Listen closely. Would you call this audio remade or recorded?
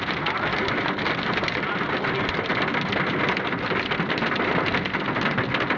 recorded